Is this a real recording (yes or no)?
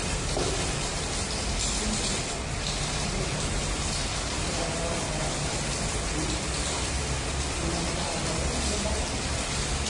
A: yes